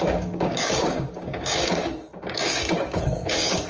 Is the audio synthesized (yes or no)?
yes